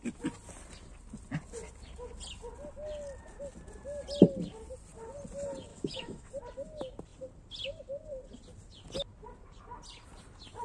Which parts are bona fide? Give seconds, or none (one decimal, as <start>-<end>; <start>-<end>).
0.0-5.7; 6.3-10.6